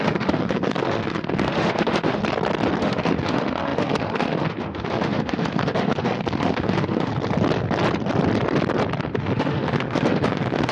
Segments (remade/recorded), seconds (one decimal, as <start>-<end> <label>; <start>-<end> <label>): 0.0-2.2 remade; 2.2-2.8 recorded; 2.8-7.1 remade; 7.1-9.0 recorded; 9.0-10.7 remade